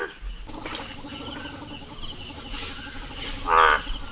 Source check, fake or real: real